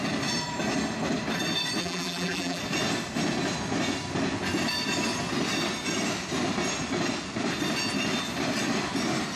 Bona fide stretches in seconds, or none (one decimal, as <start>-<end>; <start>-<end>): 0.0-1.8; 2.6-9.4